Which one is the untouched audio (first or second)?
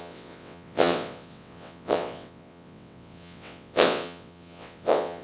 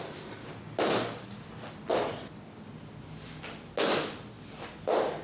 second